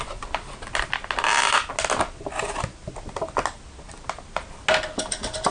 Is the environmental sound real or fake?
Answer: real